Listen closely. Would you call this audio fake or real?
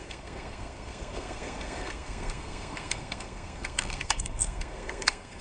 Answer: fake